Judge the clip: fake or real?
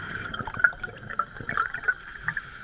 real